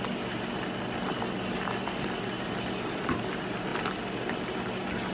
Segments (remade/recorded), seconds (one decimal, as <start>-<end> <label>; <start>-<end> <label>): 0.0-5.1 recorded

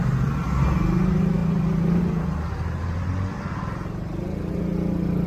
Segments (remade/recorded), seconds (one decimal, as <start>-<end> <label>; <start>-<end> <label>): 0.0-5.3 recorded